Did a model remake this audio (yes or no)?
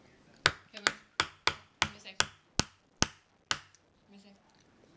no